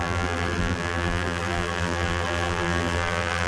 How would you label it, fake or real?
fake